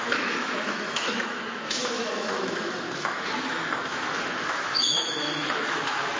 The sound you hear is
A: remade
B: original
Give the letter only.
A